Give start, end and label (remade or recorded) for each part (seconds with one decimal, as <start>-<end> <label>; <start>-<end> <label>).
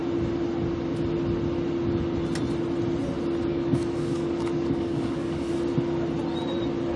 0.0-3.5 recorded; 3.5-5.5 remade; 5.5-7.0 recorded